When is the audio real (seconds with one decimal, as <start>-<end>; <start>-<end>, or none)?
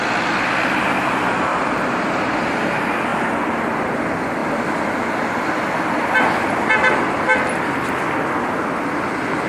0.0-1.5; 2.2-9.5